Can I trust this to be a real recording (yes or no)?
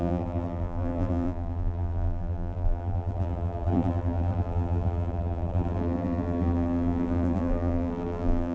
no